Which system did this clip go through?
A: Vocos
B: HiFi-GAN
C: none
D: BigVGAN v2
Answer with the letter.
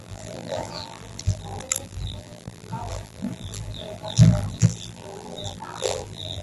D